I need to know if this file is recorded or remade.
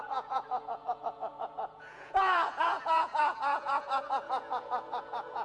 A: remade